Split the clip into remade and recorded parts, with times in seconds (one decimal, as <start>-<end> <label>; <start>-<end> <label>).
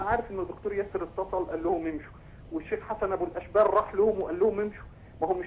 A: 0.0-5.5 recorded